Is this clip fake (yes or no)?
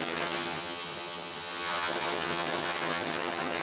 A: yes